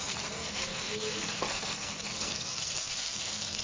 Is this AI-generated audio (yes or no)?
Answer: yes